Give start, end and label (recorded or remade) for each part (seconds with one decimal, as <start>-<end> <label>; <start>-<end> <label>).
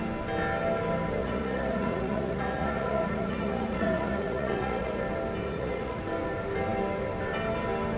0.0-1.2 recorded; 1.2-5.0 remade; 5.0-5.4 recorded; 5.4-6.0 remade; 6.0-8.0 recorded